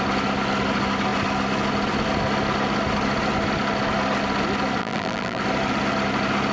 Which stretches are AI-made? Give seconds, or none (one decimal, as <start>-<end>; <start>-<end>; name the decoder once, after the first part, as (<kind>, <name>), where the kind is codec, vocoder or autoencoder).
4.8-5.4 (vocoder, BigVGAN v2)